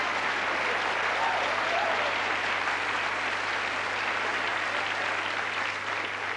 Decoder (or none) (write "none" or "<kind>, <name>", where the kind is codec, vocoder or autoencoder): none